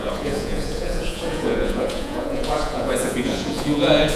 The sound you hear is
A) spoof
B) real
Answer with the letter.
A